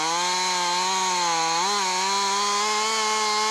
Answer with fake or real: real